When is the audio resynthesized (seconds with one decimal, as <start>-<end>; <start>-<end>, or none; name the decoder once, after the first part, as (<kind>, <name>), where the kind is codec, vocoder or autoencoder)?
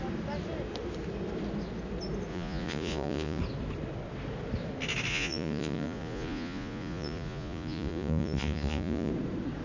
2.3-3.4 (vocoder, Vocos); 5.1-9.1